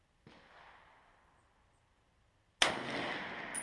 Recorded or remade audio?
recorded